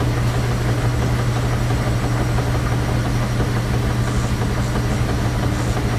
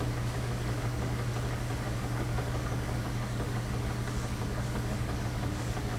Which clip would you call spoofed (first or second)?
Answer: second